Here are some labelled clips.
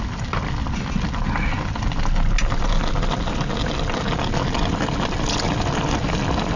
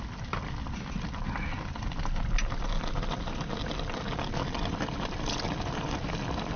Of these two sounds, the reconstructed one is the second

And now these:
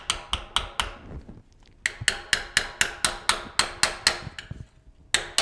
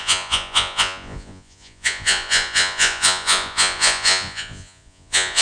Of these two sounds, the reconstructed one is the second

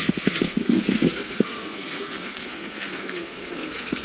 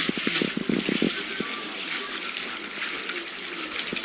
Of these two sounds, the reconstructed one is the first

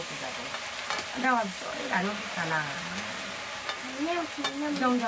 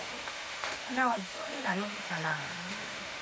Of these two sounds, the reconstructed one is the second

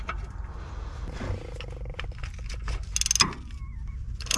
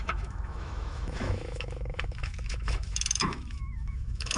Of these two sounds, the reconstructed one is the second